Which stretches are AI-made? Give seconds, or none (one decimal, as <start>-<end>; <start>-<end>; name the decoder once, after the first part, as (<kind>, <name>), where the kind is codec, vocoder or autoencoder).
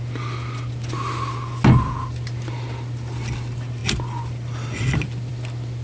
none